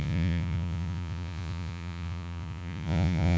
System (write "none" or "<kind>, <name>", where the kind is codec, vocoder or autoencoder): vocoder, Vocos